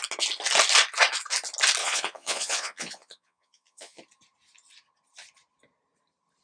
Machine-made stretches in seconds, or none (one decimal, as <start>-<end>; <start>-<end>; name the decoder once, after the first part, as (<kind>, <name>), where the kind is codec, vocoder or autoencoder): 1.8-4.0 (vocoder, Vocos)